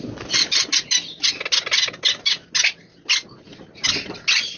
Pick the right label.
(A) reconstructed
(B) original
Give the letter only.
B